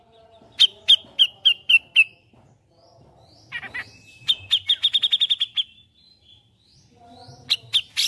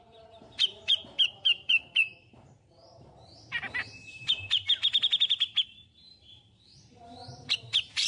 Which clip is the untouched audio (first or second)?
first